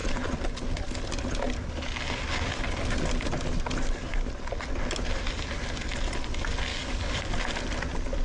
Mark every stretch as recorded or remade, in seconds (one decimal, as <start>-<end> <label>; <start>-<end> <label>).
0.0-6.7 recorded; 6.7-7.3 remade; 7.3-8.2 recorded